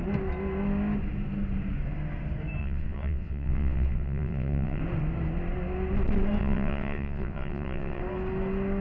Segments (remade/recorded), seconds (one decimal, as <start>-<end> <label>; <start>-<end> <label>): 0.0-2.6 recorded; 2.6-4.8 remade; 4.8-6.4 recorded; 6.4-8.0 remade; 8.0-8.8 recorded